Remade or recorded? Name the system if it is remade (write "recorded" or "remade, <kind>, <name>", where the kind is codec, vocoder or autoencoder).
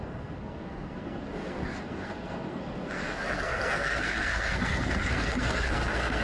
remade, codec, SNAC